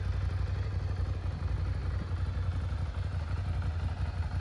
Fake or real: real